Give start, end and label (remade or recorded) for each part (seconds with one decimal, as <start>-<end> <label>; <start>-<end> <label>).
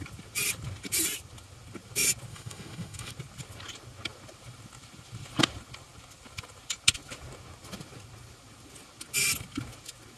0.0-2.3 recorded; 2.3-3.1 remade; 3.1-10.2 recorded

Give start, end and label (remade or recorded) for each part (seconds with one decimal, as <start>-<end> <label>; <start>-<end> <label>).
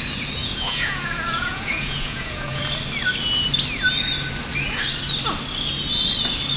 0.0-0.4 recorded; 0.4-2.6 remade; 2.6-6.6 recorded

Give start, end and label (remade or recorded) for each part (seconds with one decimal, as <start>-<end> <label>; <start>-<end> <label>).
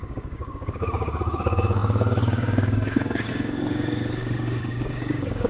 0.0-5.5 remade